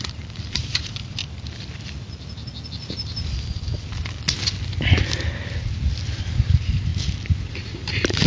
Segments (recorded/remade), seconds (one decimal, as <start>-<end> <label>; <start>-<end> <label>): 0.0-1.2 remade; 1.2-6.2 recorded; 6.2-6.9 remade; 6.9-7.5 recorded; 7.5-8.3 remade